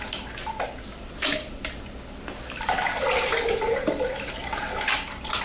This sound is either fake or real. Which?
real